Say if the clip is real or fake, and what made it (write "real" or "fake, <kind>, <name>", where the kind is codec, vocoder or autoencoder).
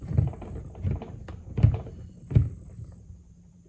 fake, vocoder, BigVGAN v2